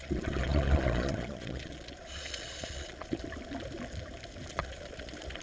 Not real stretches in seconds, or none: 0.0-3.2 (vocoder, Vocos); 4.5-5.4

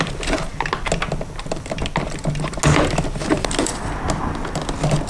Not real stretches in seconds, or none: none

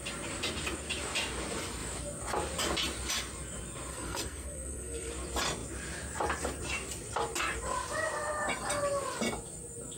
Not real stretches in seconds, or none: 3.9-5.1 (codec, SNAC)

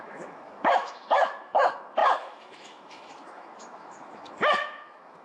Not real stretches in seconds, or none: 0.0-5.2 (autoencoder, DAC-VAE)

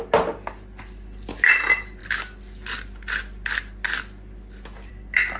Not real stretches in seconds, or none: none

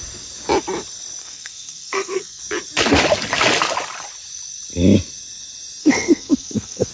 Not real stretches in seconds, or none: 1.2-2.4 (codec, SNAC); 5.8-6.9

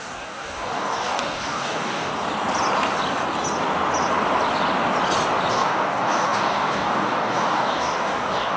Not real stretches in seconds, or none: 0.0-2.1 (codec, DAC); 5.5-8.6

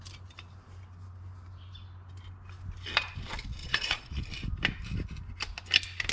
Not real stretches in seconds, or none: 3.6-4.2 (vocoder, Vocos)